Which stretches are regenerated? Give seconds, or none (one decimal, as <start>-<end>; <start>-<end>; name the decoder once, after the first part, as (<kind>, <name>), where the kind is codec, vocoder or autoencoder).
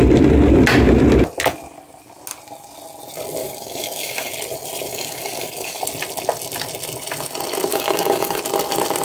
3.4-4.3 (codec, DAC); 4.9-5.8; 7.7-8.4